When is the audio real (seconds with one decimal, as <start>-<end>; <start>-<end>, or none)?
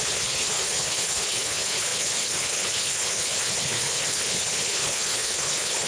none